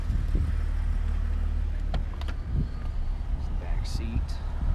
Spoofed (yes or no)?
no